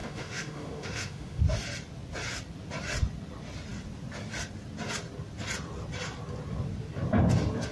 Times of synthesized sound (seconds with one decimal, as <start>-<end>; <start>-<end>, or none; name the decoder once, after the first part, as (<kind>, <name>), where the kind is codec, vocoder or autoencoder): 0.0-1.4 (autoencoder, DAC-VAE)